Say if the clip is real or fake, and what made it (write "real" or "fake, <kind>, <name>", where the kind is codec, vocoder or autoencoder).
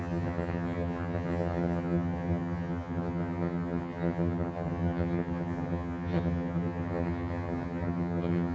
fake, vocoder, HiFi-GAN